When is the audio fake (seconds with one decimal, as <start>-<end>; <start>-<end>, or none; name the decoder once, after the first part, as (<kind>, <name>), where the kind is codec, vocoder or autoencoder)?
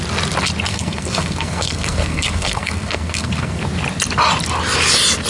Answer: 0.7-3.6 (codec, SNAC)